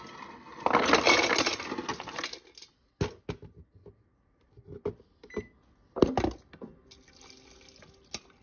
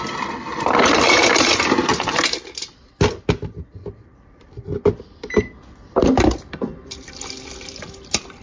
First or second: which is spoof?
second